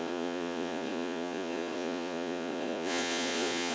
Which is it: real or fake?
fake